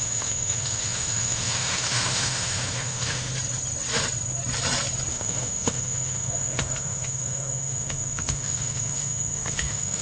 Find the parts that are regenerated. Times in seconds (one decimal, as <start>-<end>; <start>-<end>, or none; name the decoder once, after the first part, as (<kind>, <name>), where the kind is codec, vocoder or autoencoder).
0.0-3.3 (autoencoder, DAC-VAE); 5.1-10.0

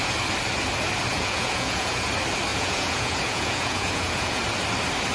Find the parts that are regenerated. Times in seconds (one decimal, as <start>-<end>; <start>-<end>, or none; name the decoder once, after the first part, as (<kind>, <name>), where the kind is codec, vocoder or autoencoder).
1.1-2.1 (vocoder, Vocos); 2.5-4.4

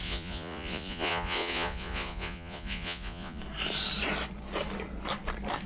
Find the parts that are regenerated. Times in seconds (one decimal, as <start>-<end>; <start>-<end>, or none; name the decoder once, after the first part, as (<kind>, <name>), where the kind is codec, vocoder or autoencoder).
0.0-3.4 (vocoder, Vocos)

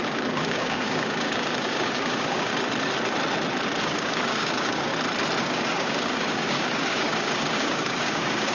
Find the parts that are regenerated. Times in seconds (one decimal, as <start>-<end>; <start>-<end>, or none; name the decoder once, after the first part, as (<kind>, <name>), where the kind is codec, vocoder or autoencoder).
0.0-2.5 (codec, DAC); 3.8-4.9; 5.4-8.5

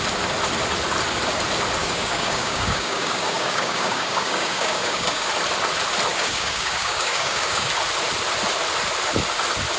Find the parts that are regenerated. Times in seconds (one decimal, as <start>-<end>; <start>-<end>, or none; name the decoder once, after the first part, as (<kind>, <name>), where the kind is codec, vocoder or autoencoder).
1.8-5.3 (codec, DAC); 6.1-7.7